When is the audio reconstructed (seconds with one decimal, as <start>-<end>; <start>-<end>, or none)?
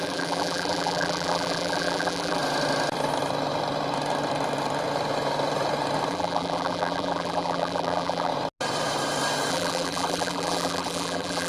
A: 0.0-2.4; 6.1-8.3; 9.5-11.5